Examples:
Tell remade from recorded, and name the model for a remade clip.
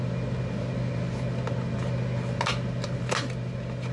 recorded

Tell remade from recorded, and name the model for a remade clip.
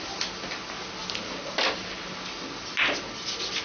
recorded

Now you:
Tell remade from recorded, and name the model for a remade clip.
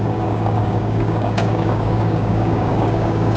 remade, codec, DAC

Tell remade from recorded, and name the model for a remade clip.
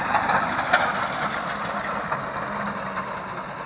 recorded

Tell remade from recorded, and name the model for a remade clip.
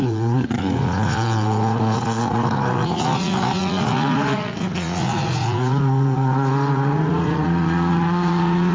remade, vocoder, Vocos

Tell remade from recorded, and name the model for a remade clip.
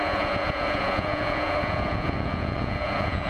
remade, vocoder, Vocos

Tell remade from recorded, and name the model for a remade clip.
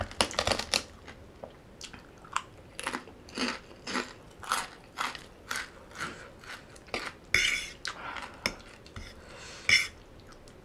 recorded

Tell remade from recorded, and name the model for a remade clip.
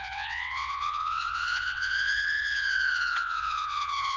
remade, vocoder, WaveNeXt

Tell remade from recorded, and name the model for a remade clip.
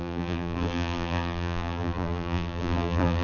remade, vocoder, BigVGAN v2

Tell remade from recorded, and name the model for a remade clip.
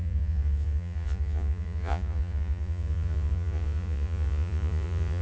remade, vocoder, Vocos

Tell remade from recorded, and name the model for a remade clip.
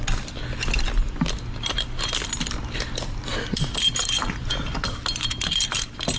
recorded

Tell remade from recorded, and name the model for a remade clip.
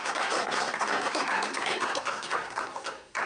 remade, codec, SNAC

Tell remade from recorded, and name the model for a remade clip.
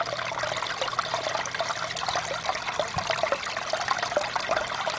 recorded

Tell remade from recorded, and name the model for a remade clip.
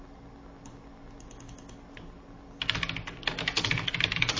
recorded